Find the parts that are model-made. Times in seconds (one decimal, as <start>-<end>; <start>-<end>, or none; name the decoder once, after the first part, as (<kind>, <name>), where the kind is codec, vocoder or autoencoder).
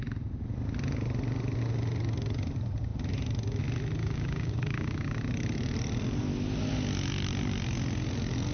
4.0-5.2 (codec, DAC)